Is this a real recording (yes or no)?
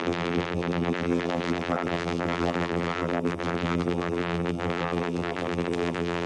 no